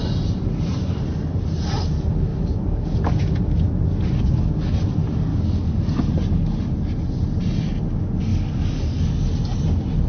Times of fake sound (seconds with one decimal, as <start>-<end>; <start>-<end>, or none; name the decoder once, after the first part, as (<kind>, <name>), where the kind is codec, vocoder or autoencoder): 2.3-3.2 (codec, DAC); 5.3-5.8; 8.3-9.1